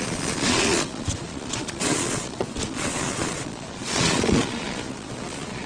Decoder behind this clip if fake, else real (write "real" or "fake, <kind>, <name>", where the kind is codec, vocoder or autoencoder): fake, vocoder, Vocos